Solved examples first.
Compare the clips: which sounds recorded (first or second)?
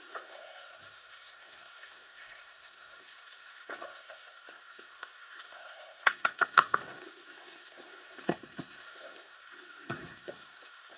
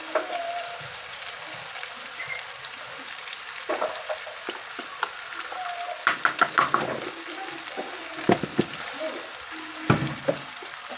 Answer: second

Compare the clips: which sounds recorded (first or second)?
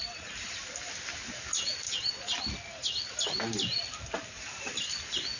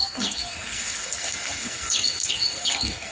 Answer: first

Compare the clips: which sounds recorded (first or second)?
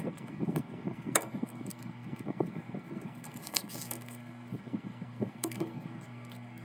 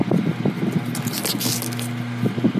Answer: second